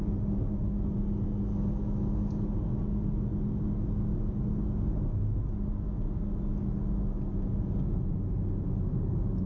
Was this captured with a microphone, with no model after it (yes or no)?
yes